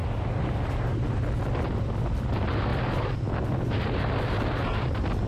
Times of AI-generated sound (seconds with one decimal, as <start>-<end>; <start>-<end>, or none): none